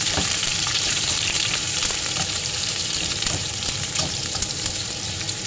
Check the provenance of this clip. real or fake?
fake